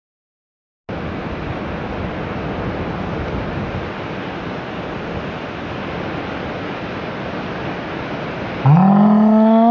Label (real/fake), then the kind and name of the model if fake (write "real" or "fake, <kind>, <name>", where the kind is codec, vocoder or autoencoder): real